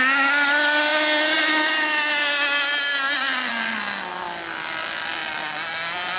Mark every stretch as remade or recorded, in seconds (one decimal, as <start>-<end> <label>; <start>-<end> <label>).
0.0-6.2 recorded